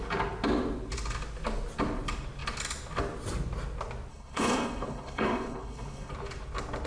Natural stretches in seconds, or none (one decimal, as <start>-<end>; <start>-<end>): 0.0-4.1; 6.1-6.9